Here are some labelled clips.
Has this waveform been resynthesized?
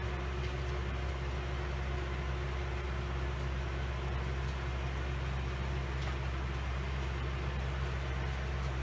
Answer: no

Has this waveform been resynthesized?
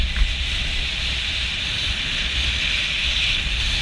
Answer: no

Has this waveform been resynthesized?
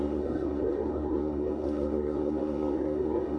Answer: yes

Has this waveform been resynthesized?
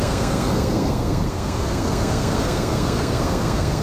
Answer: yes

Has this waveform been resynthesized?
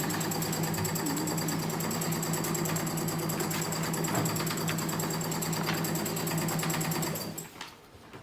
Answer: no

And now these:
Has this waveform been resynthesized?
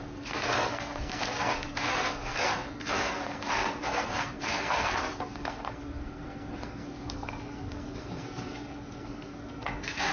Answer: yes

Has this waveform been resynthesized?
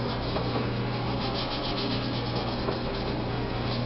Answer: yes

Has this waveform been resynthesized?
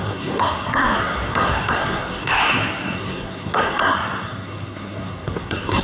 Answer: yes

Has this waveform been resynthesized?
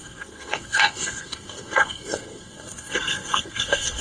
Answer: yes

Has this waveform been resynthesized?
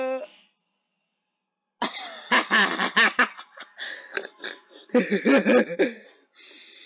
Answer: no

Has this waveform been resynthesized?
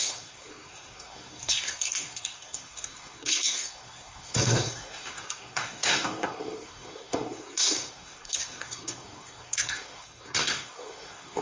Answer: yes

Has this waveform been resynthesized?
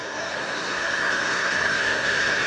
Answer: yes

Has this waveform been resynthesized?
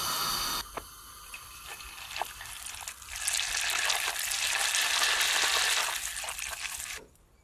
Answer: no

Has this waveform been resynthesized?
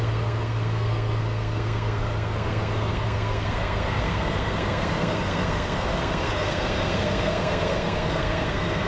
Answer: yes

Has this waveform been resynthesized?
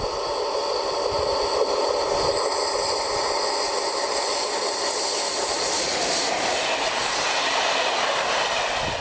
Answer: no